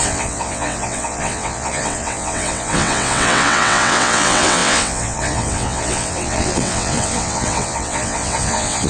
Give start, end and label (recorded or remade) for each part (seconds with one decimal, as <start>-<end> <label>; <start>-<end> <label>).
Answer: 0.0-8.9 remade